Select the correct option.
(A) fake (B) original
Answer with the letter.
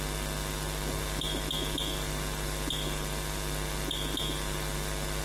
B